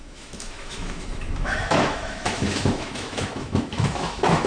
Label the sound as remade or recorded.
remade